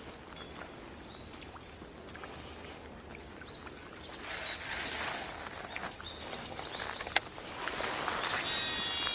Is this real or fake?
real